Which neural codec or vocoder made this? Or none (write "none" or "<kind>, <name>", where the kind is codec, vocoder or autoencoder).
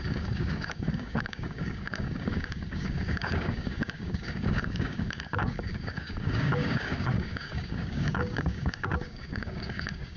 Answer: codec, DAC